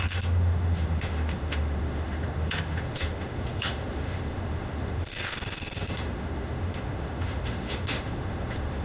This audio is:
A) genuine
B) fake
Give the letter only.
B